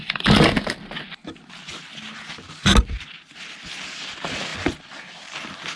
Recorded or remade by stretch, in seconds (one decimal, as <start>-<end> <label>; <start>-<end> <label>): 0.0-5.8 recorded